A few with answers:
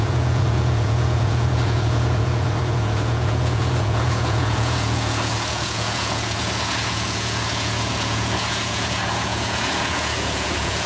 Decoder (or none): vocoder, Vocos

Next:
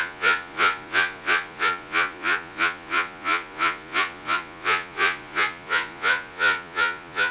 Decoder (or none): vocoder, Vocos